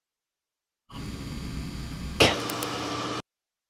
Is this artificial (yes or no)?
no